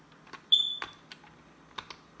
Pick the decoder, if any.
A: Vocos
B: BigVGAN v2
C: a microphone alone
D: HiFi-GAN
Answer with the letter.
C